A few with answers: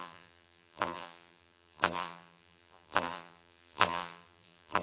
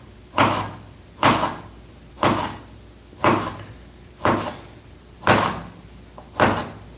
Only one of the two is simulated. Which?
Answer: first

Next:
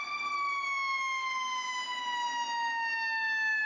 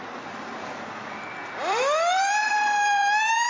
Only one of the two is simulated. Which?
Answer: second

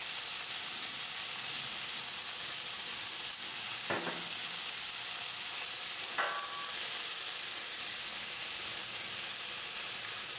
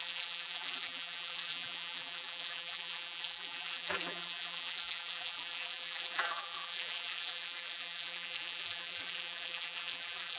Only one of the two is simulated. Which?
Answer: second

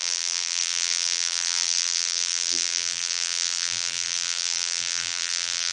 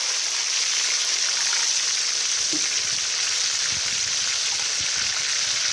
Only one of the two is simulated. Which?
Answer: first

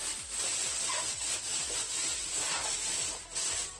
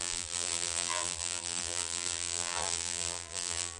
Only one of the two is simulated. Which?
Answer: second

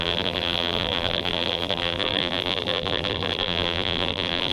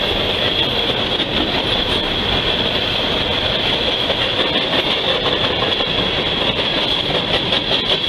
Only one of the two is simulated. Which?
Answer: first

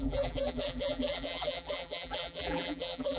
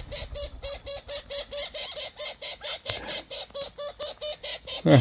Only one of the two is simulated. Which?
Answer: first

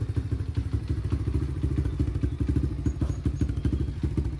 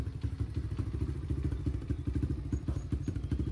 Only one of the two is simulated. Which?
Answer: second